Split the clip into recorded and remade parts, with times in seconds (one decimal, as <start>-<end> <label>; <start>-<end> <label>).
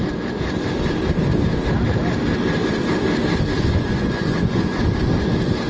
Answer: 0.0-3.6 recorded; 3.6-4.8 remade; 4.8-5.7 recorded